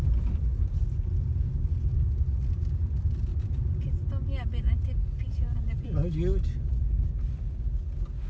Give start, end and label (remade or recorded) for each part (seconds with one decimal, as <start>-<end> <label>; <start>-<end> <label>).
0.0-3.3 recorded; 3.3-4.1 remade; 4.1-8.3 recorded